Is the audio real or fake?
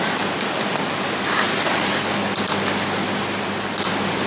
real